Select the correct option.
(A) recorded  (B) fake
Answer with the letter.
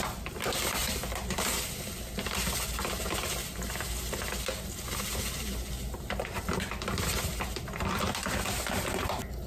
A